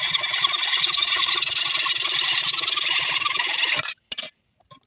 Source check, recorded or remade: remade